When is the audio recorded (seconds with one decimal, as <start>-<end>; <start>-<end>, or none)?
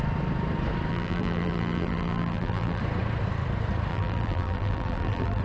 0.0-0.9; 2.8-3.9